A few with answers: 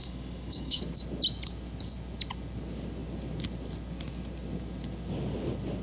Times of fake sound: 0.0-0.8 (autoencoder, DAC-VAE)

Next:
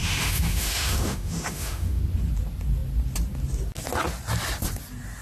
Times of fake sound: 0.0-2.0 (autoencoder, DAC-VAE)

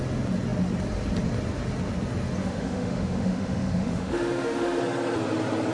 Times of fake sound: 2.4-4.8 (autoencoder, DAC-VAE)